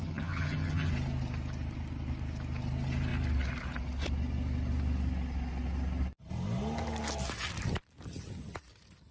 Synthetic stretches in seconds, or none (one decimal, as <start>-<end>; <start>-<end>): 0.0-0.9

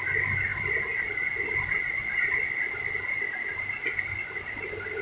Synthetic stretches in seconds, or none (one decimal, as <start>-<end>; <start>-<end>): none

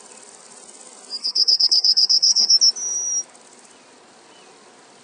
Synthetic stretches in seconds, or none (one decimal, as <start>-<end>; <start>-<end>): 1.2-2.5

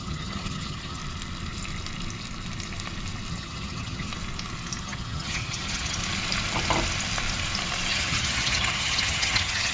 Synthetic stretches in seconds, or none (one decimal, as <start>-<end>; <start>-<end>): 0.0-1.0; 3.3-4.1; 4.8-6.0; 7.9-9.7